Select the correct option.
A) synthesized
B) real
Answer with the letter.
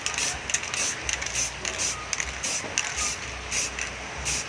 B